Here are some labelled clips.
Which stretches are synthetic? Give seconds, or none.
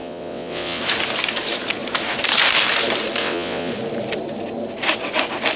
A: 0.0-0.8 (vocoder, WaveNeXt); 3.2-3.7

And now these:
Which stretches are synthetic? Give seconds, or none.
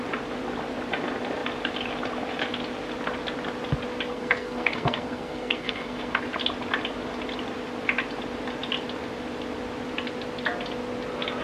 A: 4.1-6.2 (codec, SNAC)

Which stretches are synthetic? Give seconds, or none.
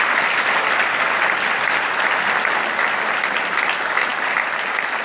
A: none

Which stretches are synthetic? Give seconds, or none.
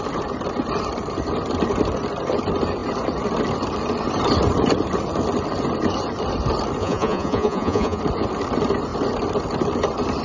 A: 6.8-8.0 (vocoder, Vocos)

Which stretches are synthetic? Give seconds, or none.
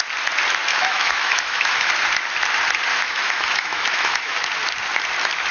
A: 0.7-1.9 (autoencoder, DAC-VAE); 2.9-4.5